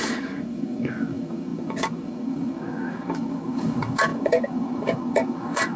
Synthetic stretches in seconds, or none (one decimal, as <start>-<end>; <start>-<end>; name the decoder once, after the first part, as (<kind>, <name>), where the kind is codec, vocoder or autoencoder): 0.0-5.8 (codec, DAC)